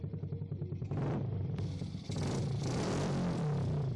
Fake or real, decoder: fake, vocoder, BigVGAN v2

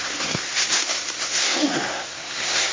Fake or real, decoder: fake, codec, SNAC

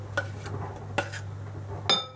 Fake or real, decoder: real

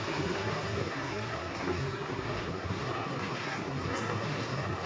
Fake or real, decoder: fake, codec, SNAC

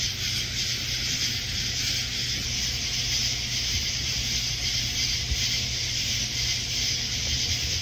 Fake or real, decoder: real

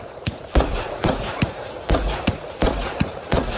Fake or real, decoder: fake, vocoder, Vocos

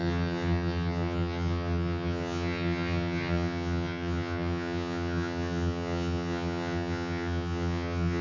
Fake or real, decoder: fake, vocoder, HiFi-GAN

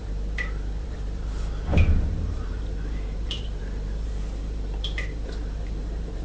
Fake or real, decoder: fake, vocoder, BigVGAN v2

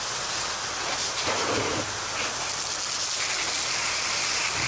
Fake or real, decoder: real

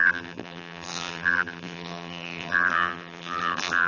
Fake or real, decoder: fake, vocoder, BigVGAN v2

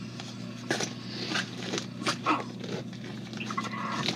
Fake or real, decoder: real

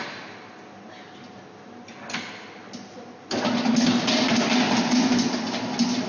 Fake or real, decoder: real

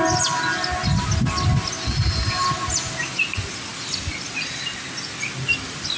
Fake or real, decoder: real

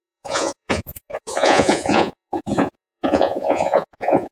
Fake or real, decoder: fake, vocoder, Vocos